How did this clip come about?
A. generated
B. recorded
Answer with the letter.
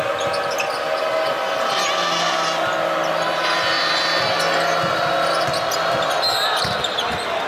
B